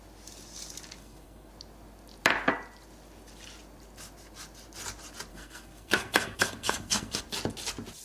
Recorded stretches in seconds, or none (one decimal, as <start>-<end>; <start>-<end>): 0.0-1.0; 1.5-5.3; 7.2-8.0